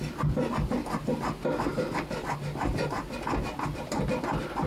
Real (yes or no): yes